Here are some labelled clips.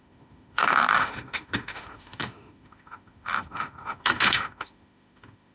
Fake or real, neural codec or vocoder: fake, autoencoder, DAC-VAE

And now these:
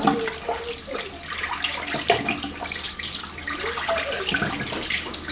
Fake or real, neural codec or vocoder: real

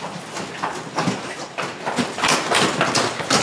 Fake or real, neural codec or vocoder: real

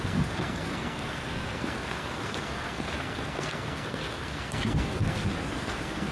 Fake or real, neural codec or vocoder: fake, codec, SNAC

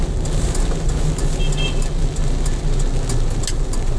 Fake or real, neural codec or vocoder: real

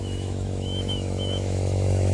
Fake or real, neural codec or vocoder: fake, autoencoder, DAC-VAE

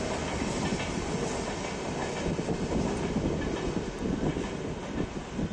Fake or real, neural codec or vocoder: real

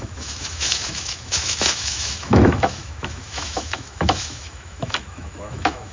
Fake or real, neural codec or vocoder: fake, autoencoder, DAC-VAE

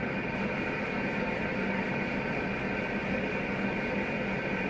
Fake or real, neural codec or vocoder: real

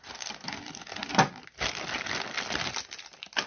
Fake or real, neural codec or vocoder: real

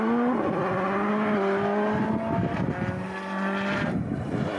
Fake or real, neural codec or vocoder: real